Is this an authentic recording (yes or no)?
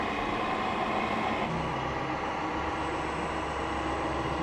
yes